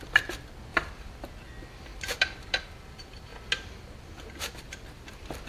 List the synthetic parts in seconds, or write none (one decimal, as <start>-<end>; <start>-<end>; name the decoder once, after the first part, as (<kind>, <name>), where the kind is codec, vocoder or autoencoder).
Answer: 0.7-1.3 (vocoder, BigVGAN v2); 1.9-2.9